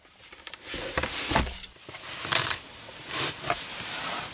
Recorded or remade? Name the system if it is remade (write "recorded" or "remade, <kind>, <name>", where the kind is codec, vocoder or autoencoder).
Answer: recorded